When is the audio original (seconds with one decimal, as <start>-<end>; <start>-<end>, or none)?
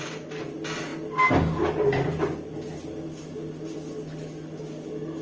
0.0-5.2